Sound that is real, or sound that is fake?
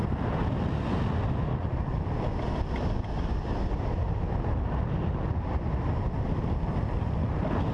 real